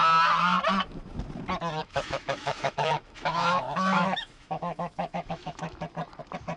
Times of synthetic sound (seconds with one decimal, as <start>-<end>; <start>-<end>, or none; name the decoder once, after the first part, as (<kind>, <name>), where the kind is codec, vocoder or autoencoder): 1.8-5.8 (autoencoder, DAC-VAE)